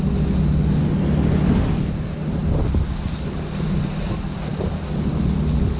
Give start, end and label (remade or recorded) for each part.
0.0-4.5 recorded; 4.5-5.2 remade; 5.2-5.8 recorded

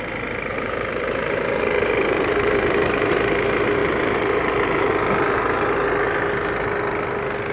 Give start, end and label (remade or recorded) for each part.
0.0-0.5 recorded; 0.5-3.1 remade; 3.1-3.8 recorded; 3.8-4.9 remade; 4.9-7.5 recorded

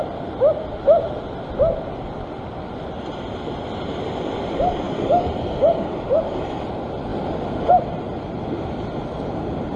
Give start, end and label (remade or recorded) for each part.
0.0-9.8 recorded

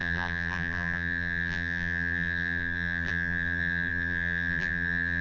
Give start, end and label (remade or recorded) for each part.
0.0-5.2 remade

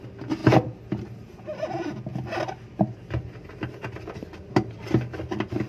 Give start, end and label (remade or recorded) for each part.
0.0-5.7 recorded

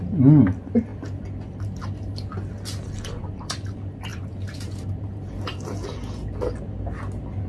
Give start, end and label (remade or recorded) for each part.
0.0-4.1 recorded; 4.1-5.3 remade; 5.3-7.5 recorded

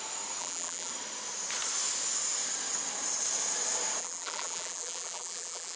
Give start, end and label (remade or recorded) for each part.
0.0-0.4 recorded; 0.4-0.9 remade; 0.9-4.0 recorded; 4.0-5.8 remade

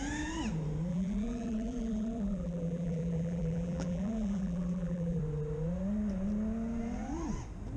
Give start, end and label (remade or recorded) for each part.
0.0-0.9 recorded; 0.9-5.2 remade; 5.2-7.8 recorded